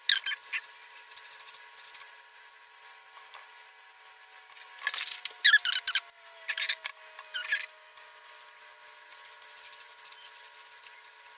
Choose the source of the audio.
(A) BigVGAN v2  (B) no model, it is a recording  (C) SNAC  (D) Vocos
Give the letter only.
B